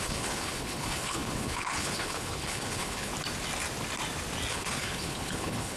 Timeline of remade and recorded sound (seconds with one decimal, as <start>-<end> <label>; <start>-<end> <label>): 0.0-3.1 remade; 3.1-4.5 recorded; 4.5-5.8 remade